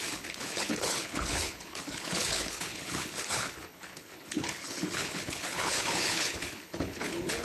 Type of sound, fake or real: fake